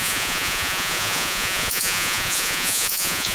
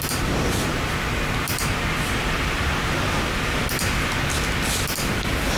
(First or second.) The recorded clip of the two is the second